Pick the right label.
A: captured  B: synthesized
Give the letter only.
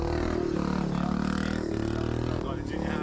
A